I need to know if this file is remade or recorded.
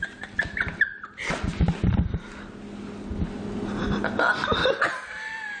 recorded